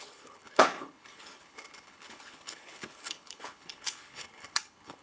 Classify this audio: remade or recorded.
remade